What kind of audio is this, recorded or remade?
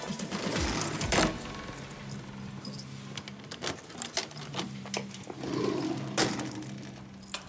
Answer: recorded